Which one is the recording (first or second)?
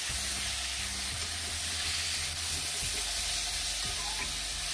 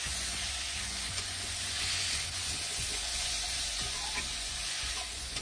first